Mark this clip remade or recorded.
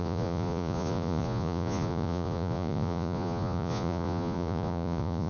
remade